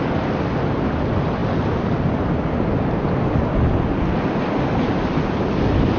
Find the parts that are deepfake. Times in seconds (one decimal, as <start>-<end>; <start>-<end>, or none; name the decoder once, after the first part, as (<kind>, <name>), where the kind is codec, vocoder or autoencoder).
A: none